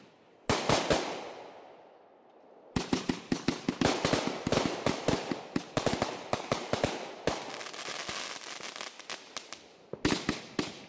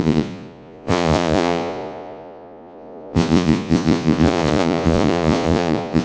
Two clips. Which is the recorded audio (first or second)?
first